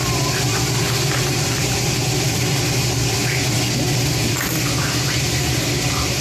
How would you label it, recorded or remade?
remade